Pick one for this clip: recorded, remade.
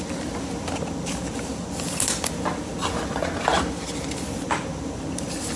recorded